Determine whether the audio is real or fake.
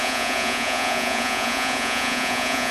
fake